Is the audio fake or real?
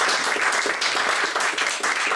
real